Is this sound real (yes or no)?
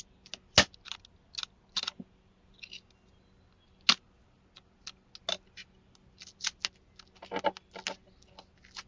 yes